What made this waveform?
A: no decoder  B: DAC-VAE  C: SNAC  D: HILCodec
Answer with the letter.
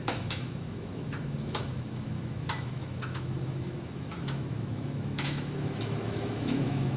B